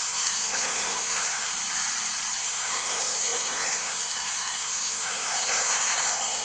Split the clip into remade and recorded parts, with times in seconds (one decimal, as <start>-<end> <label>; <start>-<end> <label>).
0.0-1.5 remade; 1.5-2.4 recorded; 2.4-6.4 remade